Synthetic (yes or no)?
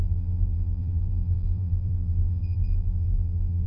yes